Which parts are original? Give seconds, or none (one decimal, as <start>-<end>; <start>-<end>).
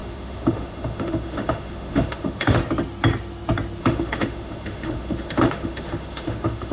2.6-3.8